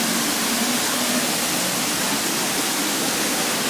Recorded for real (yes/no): yes